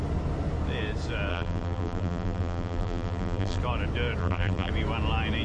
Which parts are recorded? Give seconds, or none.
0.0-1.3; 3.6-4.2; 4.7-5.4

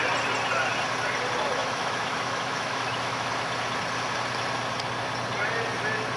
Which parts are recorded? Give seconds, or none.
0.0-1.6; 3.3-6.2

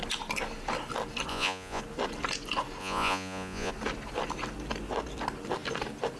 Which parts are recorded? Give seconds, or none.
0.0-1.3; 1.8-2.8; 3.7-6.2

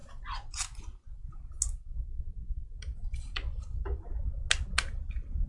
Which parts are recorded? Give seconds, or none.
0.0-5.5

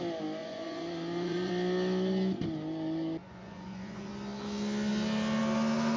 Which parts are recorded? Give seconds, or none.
0.0-0.4; 1.5-3.2; 4.1-6.0

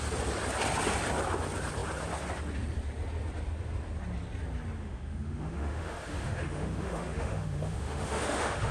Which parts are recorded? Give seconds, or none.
0.0-4.8

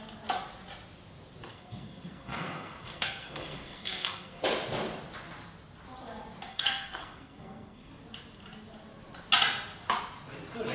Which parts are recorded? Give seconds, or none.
0.0-1.5; 4.4-6.5; 7.9-10.7

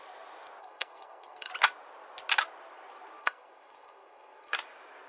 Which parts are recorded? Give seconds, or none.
0.0-0.6; 1.5-3.2; 4.5-5.1